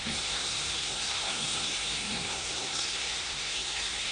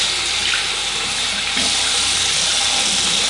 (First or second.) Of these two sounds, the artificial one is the first